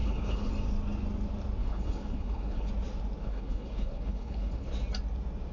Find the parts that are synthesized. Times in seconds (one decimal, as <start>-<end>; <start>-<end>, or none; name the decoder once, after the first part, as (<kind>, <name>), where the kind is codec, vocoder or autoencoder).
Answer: 0.0-0.5 (codec, HILCodec); 1.6-2.7; 3.2-4.7